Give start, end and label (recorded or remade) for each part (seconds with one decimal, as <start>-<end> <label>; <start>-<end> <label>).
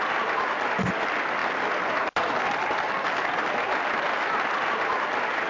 0.0-5.5 recorded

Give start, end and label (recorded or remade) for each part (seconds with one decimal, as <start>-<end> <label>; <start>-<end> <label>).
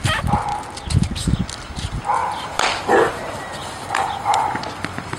0.0-3.6 recorded; 3.6-4.6 remade; 4.6-5.2 recorded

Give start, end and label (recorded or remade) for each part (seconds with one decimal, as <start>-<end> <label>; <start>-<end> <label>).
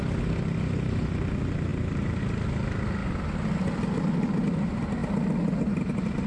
0.0-1.7 recorded; 1.7-2.2 remade; 2.2-6.3 recorded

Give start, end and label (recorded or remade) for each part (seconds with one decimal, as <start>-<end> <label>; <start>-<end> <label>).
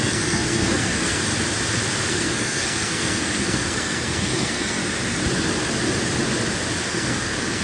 0.0-1.3 remade; 1.3-2.1 recorded; 2.1-4.8 remade; 4.8-6.9 recorded; 6.9-7.6 remade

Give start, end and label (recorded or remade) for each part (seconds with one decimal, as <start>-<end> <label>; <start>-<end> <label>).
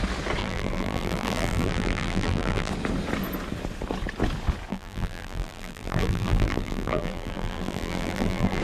0.0-0.4 recorded; 0.4-2.7 remade; 2.7-4.7 recorded; 4.7-8.6 remade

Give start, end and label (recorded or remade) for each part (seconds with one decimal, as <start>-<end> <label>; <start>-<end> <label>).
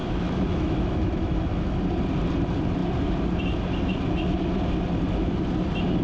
0.0-1.8 remade; 1.8-6.0 recorded